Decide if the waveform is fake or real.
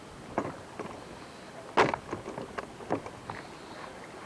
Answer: real